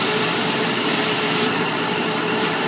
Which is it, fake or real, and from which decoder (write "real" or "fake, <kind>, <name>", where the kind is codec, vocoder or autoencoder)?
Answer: fake, vocoder, BigVGAN v2